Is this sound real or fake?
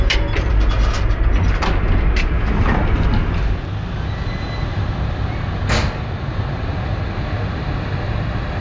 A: real